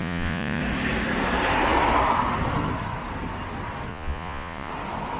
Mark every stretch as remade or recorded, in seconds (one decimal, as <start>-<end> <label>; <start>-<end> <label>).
0.0-0.6 remade; 0.6-3.9 recorded; 3.9-4.7 remade; 4.7-5.2 recorded

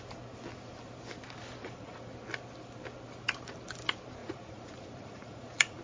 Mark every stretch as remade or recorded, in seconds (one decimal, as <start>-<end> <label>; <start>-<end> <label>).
0.0-1.6 recorded; 1.6-2.1 remade; 2.1-4.2 recorded; 4.2-5.8 remade

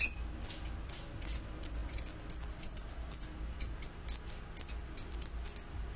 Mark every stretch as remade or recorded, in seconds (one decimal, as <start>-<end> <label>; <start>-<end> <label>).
0.0-6.0 recorded

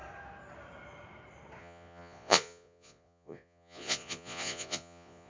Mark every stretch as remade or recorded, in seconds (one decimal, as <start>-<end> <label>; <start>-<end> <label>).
0.0-1.6 recorded; 1.6-5.3 remade

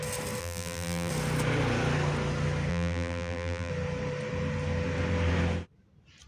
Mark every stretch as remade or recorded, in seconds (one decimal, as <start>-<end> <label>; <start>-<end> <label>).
0.0-0.4 recorded; 0.4-1.1 remade; 1.1-2.7 recorded; 2.7-3.7 remade; 3.7-6.3 recorded